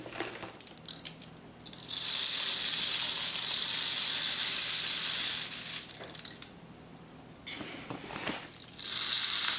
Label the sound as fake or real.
real